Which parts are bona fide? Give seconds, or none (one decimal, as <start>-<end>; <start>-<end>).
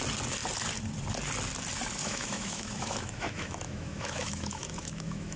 0.0-2.0